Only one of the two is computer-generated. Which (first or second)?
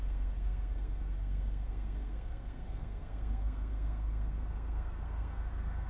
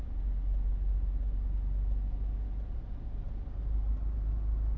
first